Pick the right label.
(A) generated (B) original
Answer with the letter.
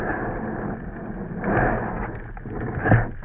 B